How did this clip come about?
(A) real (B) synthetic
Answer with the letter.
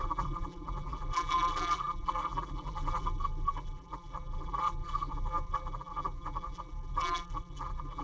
B